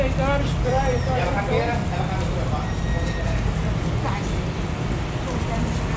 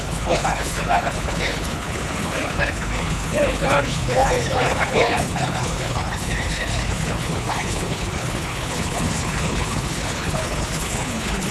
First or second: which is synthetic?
second